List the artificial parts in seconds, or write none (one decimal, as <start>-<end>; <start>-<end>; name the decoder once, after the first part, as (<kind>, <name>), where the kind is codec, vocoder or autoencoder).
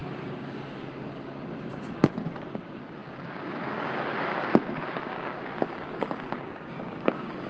0.0-7.5 (codec, DAC)